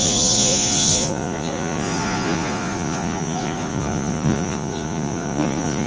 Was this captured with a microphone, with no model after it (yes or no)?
no